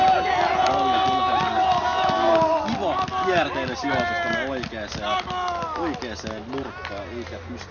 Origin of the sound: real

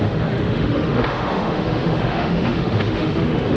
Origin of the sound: fake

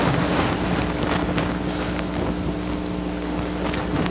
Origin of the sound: real